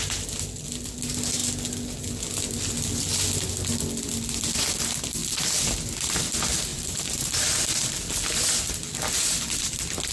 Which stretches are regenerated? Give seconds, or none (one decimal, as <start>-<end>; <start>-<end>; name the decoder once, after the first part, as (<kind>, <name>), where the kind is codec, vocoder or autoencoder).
6.7-7.5 (vocoder, BigVGAN v2)